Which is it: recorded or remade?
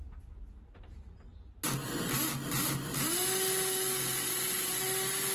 recorded